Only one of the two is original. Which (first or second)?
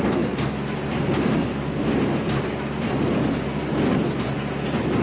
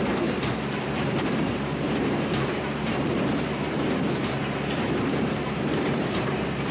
first